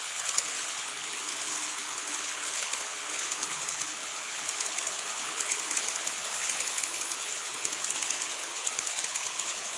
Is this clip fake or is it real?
fake